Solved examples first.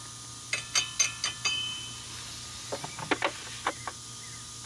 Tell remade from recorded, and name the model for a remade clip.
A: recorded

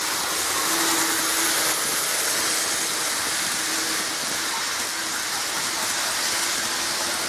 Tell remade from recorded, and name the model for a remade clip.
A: recorded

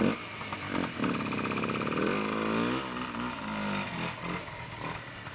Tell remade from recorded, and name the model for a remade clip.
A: recorded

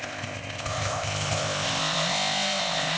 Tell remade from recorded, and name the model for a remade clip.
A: remade, codec, ZipCodec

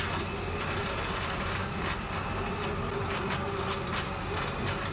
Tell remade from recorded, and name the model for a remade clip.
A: recorded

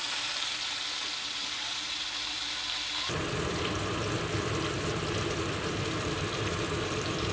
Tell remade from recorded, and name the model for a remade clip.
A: remade, vocoder, BigVGAN v2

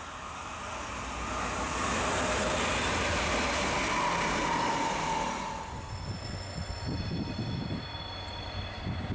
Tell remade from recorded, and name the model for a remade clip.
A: recorded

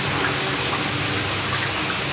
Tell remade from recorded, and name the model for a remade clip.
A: recorded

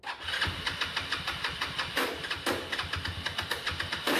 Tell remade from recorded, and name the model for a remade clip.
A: recorded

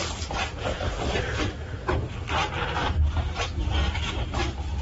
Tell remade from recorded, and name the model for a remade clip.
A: recorded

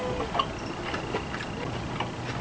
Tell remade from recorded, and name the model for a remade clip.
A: recorded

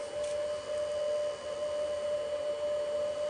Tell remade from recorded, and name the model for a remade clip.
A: recorded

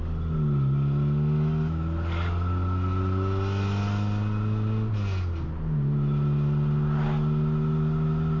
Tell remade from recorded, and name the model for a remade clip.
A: recorded